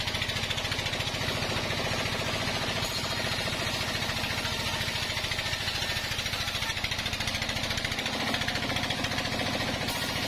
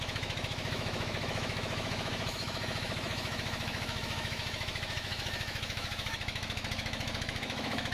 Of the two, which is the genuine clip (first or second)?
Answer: first